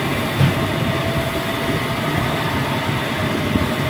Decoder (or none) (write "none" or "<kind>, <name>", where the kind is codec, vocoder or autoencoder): none